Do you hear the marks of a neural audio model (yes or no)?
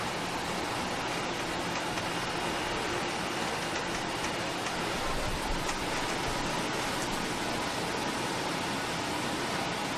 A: no